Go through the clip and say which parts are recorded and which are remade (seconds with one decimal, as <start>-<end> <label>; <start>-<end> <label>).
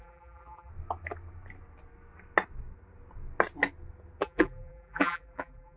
0.0-0.7 remade; 0.7-4.2 recorded; 4.2-5.8 remade